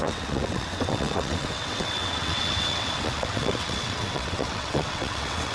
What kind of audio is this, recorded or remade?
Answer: remade